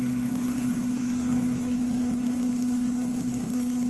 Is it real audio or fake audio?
fake